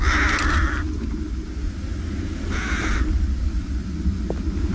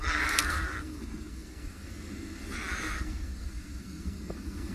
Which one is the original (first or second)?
first